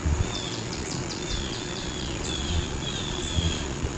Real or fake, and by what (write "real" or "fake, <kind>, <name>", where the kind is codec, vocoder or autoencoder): fake, vocoder, Vocos